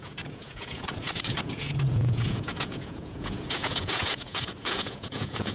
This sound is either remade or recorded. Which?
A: remade